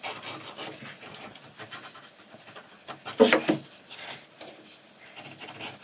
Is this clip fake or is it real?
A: real